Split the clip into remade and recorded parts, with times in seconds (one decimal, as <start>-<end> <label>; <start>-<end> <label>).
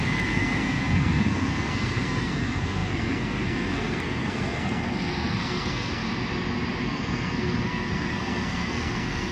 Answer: 0.0-6.0 remade; 6.0-6.8 recorded; 6.8-9.3 remade